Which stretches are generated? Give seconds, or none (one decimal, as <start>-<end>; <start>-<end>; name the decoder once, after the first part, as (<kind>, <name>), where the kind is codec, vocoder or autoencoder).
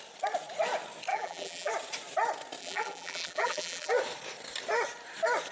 1.1-1.7 (vocoder, BigVGAN v2); 2.6-3.9